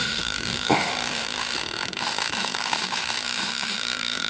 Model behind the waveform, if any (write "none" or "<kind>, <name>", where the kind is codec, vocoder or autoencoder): autoencoder, DAC-VAE